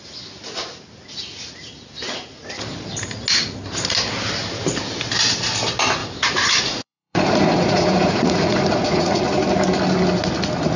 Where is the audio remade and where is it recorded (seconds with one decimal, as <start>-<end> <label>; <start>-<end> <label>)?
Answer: 0.0-6.0 recorded; 6.0-9.2 remade; 9.2-10.8 recorded